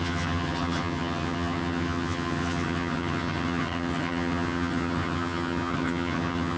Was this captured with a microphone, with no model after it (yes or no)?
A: no